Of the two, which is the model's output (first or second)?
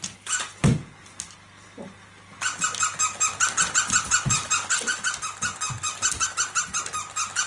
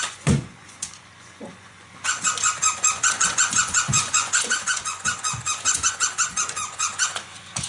second